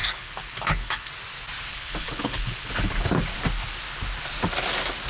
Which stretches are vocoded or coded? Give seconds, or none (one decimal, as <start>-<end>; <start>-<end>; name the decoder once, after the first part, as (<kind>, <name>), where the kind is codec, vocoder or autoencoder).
0.0-1.1 (codec, HILCodec); 1.7-3.1